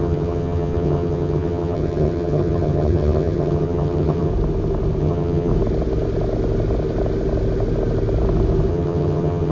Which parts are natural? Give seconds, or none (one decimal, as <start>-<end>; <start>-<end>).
4.3-5.0; 5.5-8.7